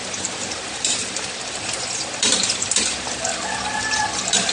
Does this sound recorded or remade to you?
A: remade